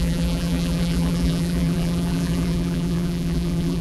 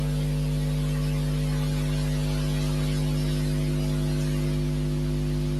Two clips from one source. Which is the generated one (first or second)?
first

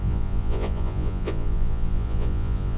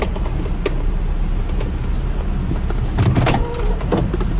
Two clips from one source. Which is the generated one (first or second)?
first